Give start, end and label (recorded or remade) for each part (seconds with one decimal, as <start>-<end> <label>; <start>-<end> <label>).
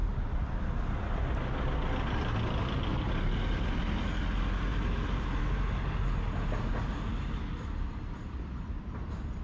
0.0-4.7 recorded; 4.7-5.4 remade; 5.4-9.4 recorded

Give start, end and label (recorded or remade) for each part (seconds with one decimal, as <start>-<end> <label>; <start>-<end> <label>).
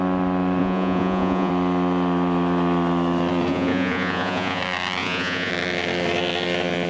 0.0-0.6 recorded; 0.6-1.5 remade; 1.5-3.5 recorded; 3.5-4.6 remade; 4.6-5.0 recorded; 5.0-5.5 remade; 5.5-6.9 recorded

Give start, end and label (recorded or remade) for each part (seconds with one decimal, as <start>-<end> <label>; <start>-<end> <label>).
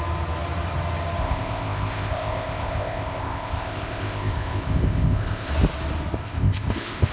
0.0-1.2 recorded; 1.2-5.5 remade; 5.5-6.2 recorded; 6.2-7.1 remade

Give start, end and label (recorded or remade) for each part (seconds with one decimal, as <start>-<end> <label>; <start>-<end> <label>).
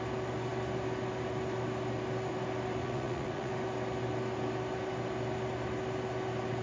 0.0-2.8 recorded; 2.8-3.5 remade; 3.5-6.6 recorded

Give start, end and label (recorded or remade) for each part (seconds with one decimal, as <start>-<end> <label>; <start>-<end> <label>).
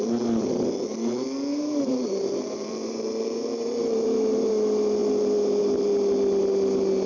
0.0-1.5 recorded; 1.5-4.5 remade; 4.5-7.1 recorded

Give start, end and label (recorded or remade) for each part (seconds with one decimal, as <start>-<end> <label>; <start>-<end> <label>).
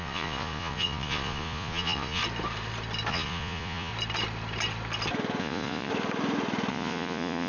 0.0-2.2 remade; 2.2-3.1 recorded; 3.1-3.9 remade; 3.9-5.4 recorded; 5.4-5.9 remade; 5.9-6.7 recorded; 6.7-7.5 remade